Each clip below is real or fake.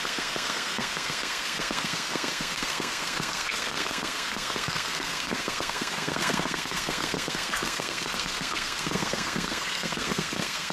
fake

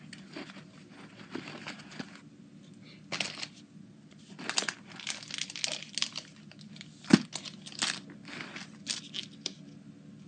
real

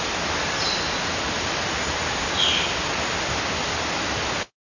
real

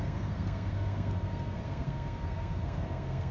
fake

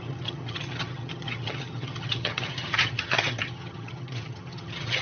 fake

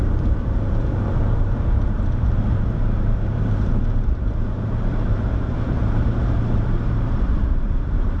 fake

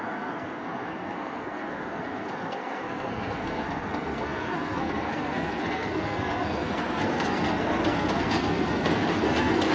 fake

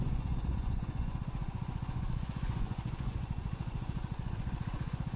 fake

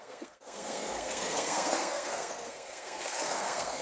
fake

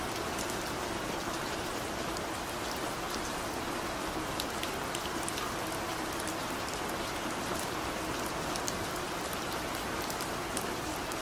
real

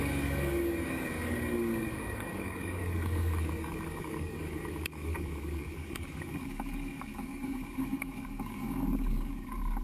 fake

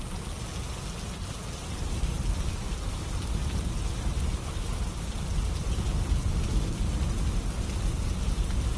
real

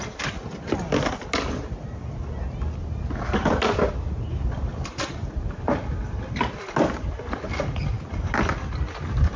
real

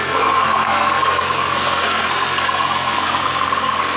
fake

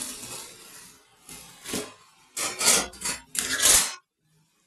real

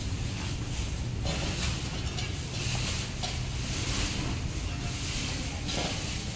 real